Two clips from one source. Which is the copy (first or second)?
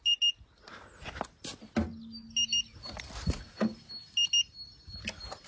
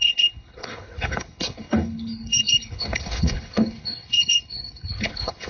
second